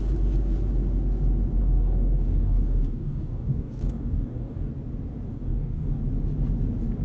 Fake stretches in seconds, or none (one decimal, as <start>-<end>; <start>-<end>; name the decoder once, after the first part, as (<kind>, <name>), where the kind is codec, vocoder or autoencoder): 1.6-4.7 (codec, DAC); 5.3-6.0